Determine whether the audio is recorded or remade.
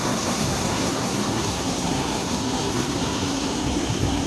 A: remade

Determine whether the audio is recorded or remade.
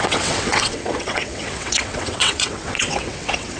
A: remade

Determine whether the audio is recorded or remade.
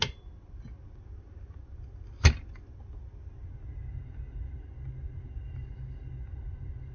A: recorded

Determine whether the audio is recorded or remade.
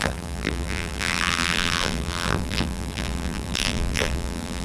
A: remade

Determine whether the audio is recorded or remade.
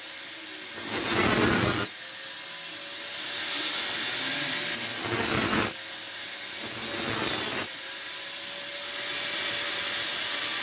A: recorded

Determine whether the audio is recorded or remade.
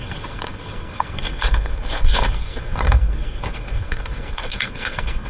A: remade